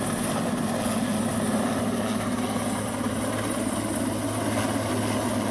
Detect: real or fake real